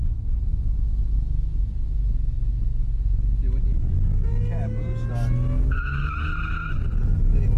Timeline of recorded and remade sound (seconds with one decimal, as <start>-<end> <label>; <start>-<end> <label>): 0.0-7.6 recorded